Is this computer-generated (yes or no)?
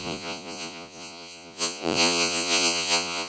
yes